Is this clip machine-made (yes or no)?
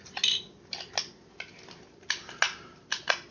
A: no